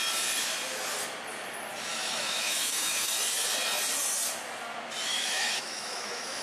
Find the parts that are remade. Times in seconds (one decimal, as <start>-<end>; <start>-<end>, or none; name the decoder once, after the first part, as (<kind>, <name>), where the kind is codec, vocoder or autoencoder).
1.9-3.1 (autoencoder, DAC-VAE); 5.1-6.4